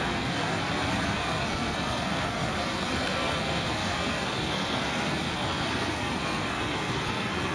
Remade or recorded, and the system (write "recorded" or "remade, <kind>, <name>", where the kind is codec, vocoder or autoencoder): remade, codec, SNAC